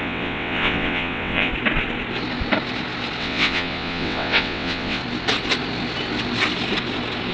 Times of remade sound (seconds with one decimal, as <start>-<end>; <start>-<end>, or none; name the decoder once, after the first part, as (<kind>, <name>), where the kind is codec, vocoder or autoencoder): 0.0-1.5 (vocoder, WaveNeXt); 3.2-5.0